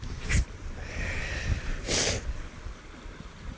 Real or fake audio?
real